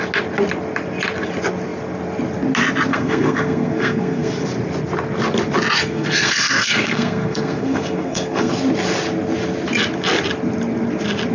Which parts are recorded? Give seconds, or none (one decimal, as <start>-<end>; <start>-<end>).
0.0-2.9; 4.3-5.8; 8.5-11.3